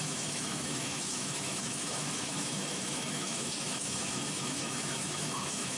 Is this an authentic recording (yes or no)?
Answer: no